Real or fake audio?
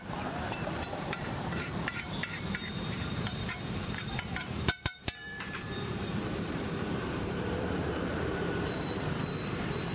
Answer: fake